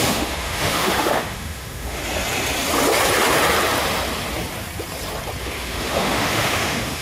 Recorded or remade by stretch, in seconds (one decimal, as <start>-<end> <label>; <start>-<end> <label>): 0.0-2.0 remade; 2.0-5.4 recorded; 5.4-7.0 remade